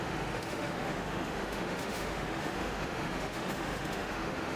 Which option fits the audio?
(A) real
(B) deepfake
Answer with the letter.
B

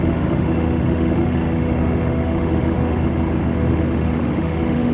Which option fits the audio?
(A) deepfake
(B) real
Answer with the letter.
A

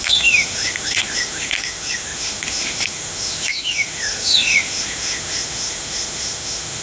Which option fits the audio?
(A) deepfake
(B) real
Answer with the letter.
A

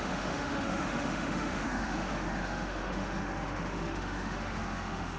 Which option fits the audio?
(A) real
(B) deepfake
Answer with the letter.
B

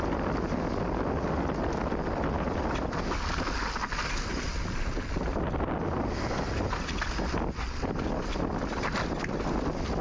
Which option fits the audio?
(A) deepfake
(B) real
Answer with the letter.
B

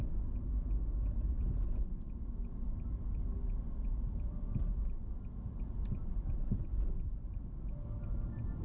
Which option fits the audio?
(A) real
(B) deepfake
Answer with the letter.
A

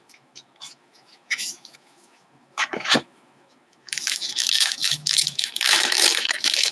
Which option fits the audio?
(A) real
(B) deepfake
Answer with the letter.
B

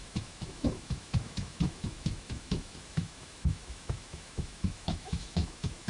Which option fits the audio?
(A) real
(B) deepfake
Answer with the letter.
B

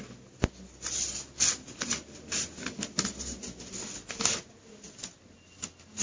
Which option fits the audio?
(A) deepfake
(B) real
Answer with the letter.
B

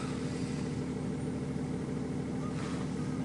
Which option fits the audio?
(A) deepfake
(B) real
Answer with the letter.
B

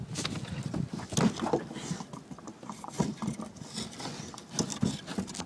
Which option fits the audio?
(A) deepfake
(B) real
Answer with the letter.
B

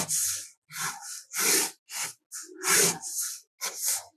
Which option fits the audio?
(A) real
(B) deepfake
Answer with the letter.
A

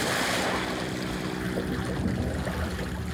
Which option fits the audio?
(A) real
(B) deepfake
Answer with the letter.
A